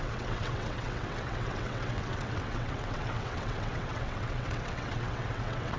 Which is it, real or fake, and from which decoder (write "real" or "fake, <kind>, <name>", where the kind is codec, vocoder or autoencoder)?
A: fake, vocoder, WaveNeXt